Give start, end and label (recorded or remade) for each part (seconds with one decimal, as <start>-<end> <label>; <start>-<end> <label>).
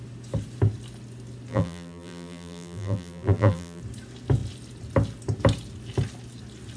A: 0.0-1.5 recorded; 1.5-3.8 remade; 3.8-6.8 recorded